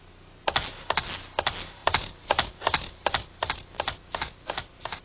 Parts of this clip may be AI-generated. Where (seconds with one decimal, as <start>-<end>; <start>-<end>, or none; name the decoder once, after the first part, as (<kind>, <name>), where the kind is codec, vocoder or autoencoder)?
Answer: none